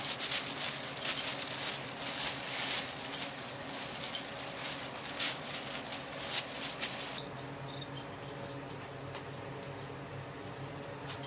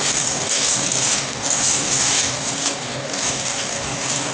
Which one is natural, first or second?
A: first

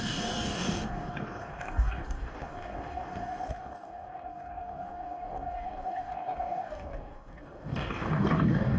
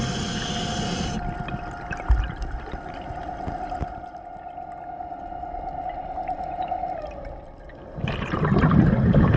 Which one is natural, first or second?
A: second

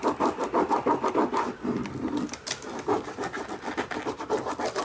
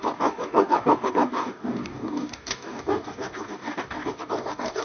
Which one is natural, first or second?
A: first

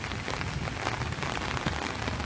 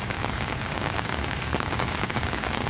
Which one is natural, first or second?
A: first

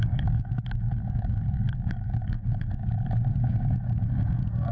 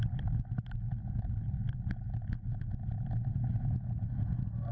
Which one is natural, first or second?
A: second